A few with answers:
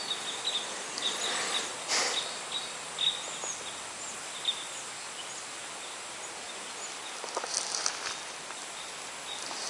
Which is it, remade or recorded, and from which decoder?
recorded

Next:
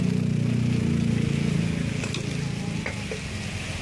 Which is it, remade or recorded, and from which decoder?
recorded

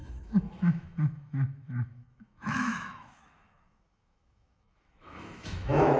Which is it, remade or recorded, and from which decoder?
remade, autoencoder, DAC-VAE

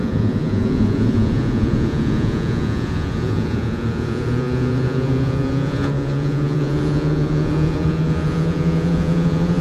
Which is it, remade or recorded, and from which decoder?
remade, vocoder, Vocos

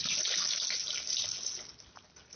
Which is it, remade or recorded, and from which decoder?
recorded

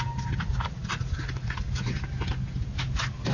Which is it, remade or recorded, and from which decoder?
recorded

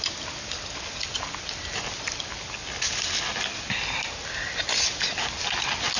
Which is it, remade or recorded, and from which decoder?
recorded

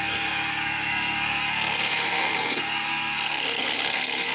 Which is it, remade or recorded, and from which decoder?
remade, codec, SNAC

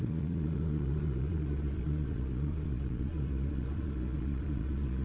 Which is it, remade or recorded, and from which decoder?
remade, vocoder, Vocos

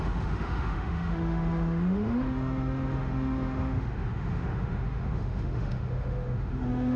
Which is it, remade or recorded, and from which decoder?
remade, autoencoder, DAC-VAE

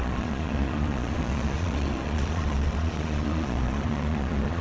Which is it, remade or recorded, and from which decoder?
remade, vocoder, Vocos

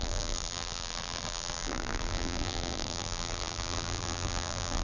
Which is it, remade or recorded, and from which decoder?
remade, vocoder, BigVGAN v2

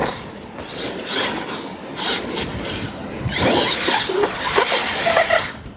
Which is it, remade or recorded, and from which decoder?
recorded